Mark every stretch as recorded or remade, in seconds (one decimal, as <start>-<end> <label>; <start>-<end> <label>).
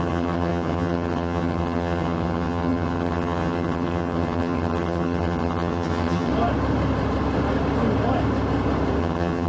0.0-6.3 remade; 6.3-9.0 recorded; 9.0-9.5 remade